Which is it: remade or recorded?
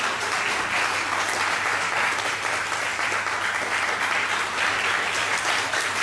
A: recorded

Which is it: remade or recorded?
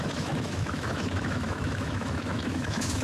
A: remade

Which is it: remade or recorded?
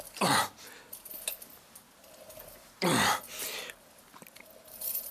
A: remade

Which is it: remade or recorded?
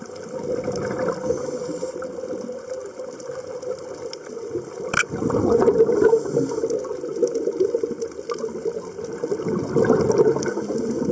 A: recorded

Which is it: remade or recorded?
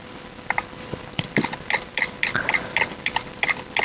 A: recorded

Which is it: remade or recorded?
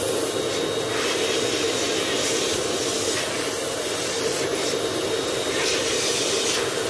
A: recorded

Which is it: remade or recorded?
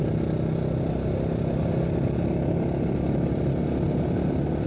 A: recorded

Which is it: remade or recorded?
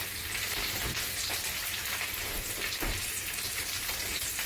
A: recorded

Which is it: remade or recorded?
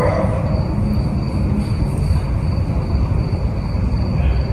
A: recorded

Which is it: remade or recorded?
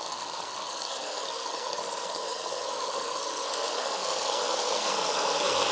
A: remade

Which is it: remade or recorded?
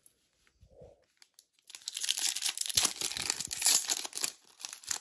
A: recorded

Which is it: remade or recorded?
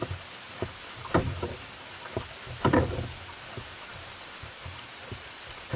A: remade